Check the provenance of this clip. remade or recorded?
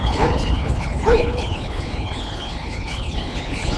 remade